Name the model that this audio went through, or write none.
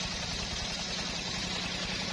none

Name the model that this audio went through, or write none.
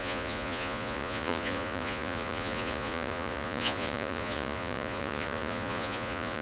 vocoder, Vocos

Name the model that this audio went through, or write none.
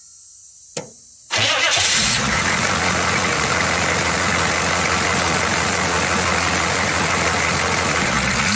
vocoder, Vocos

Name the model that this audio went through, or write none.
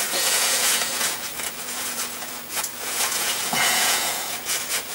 vocoder, Vocos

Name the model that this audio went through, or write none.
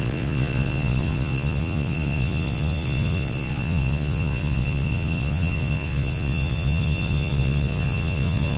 vocoder, Vocos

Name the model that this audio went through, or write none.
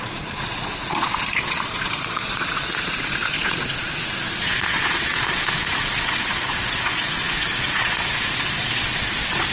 vocoder, Vocos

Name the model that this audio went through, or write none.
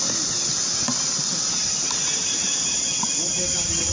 none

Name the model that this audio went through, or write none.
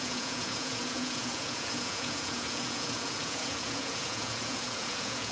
vocoder, Vocos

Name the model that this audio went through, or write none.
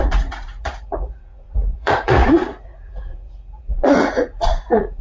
vocoder, Vocos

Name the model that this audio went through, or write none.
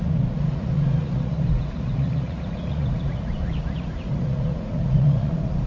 vocoder, Vocos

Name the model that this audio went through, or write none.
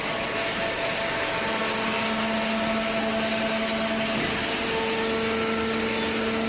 none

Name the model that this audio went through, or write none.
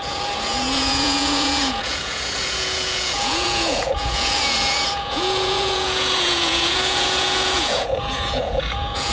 vocoder, Vocos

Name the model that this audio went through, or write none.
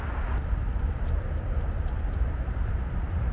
none